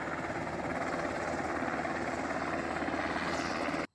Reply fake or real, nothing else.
real